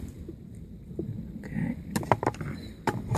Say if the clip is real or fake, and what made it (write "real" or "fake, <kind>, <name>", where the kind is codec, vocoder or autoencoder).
fake, vocoder, BigVGAN v2